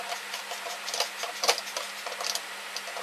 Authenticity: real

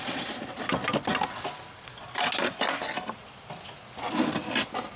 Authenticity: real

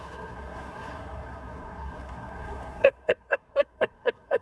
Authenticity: fake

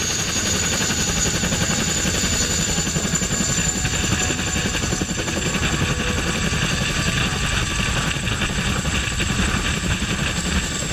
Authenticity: real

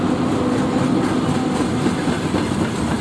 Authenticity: real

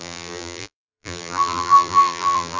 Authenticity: fake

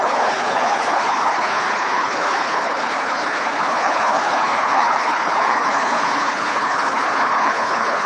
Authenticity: fake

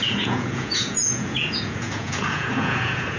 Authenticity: fake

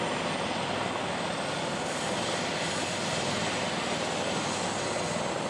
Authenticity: real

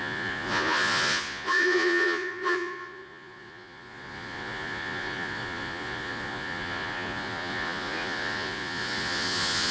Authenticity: fake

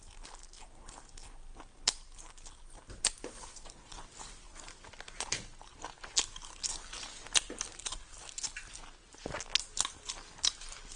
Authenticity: real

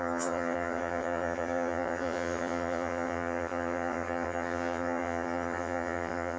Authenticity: fake